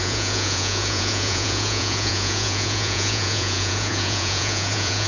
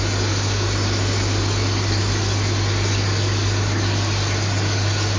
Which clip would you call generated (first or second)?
first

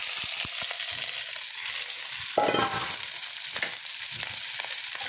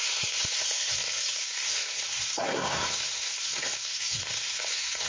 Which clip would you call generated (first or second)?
second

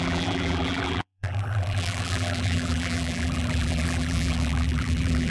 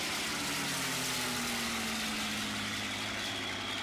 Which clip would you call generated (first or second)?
first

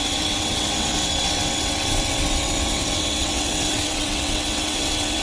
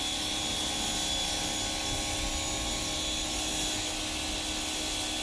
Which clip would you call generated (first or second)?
first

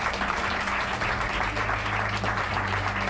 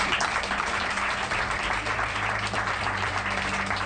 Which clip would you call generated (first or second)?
second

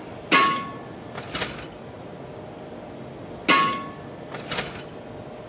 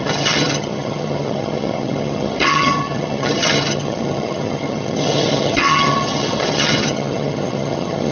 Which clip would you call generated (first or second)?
second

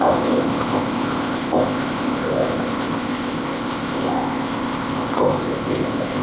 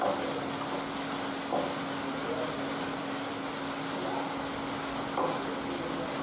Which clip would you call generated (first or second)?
first